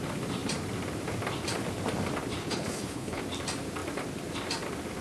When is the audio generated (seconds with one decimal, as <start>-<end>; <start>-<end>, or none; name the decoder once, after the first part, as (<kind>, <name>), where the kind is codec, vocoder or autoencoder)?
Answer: 2.4-3.2 (codec, HILCodec)